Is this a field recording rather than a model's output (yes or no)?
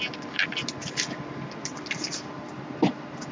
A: yes